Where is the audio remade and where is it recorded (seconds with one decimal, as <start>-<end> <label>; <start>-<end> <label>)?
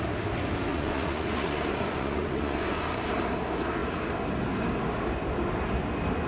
0.0-0.7 recorded; 0.7-3.1 remade; 3.1-6.3 recorded